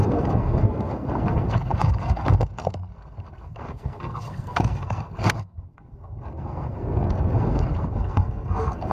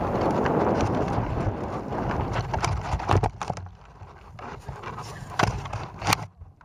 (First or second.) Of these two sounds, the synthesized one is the first